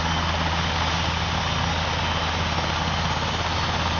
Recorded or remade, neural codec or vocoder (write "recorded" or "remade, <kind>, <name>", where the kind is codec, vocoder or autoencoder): recorded